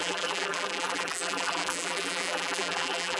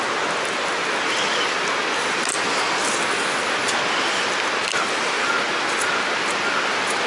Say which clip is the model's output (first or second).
first